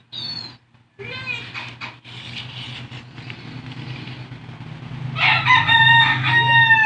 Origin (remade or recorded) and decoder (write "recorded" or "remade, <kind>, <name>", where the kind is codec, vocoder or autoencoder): recorded